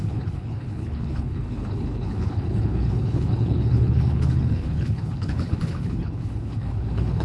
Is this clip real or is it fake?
fake